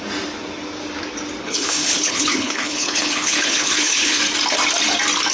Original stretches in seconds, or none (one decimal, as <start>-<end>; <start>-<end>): 0.0-1.4; 4.2-5.3